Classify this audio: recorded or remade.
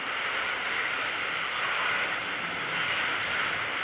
remade